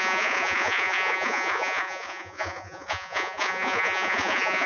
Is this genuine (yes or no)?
no